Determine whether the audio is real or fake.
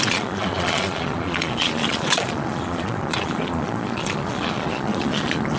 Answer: fake